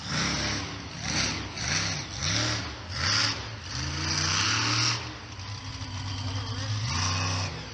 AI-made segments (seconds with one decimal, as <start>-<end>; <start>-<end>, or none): none